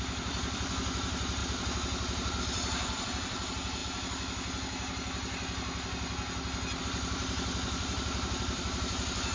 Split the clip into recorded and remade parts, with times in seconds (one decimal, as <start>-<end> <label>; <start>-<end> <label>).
0.0-1.4 remade; 1.4-2.4 recorded; 2.4-3.8 remade; 3.8-6.8 recorded; 6.8-9.3 remade